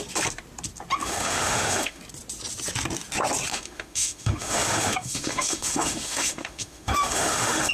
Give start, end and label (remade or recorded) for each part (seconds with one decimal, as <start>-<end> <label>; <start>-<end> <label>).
0.0-1.0 recorded; 1.0-2.0 remade; 2.0-3.5 recorded; 3.5-7.7 remade